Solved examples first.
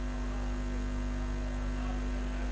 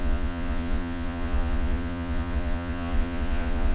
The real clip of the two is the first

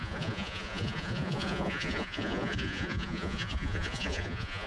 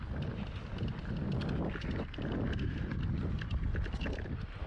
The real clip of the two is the second